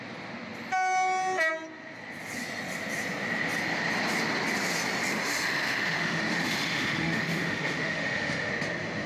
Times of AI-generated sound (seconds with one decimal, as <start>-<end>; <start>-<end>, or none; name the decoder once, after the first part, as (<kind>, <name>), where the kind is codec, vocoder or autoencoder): 5.1-8.5 (autoencoder, DAC-VAE)